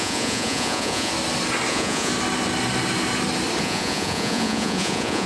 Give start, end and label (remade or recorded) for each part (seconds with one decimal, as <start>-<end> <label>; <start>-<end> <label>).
0.0-1.1 remade; 1.1-1.7 recorded; 1.7-2.1 remade; 2.1-3.6 recorded; 3.6-5.3 remade